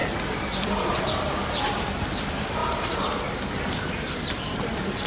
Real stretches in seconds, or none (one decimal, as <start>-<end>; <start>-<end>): 2.6-3.5